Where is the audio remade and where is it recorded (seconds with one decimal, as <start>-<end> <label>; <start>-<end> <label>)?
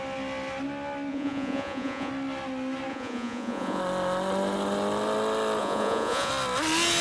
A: 0.0-1.1 recorded; 1.1-2.1 remade; 2.1-2.9 recorded; 2.9-3.8 remade; 3.8-5.6 recorded; 5.6-6.3 remade; 6.3-7.0 recorded